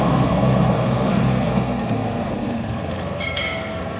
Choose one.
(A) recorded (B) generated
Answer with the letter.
B